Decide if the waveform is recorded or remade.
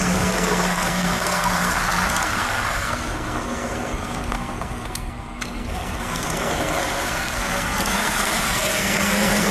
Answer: remade